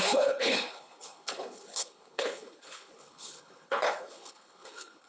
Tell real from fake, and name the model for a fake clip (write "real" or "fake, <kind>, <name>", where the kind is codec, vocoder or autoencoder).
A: fake, codec, HILCodec